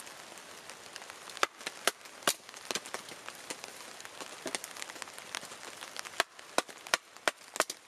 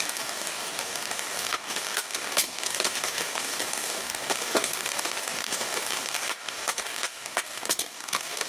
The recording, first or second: first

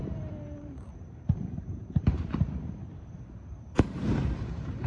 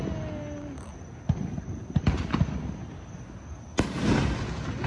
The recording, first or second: second